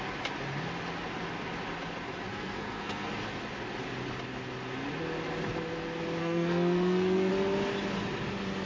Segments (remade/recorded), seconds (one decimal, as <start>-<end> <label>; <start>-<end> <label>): 0.0-2.3 recorded; 2.3-3.1 remade; 3.1-6.2 recorded; 6.2-7.3 remade; 7.3-8.7 recorded